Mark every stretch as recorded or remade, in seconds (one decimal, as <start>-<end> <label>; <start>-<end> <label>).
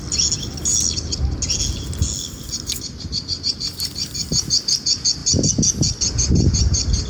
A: 0.0-7.1 recorded